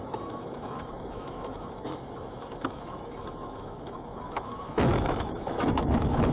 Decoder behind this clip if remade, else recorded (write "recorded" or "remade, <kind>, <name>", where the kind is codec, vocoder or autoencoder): remade, autoencoder, DAC-VAE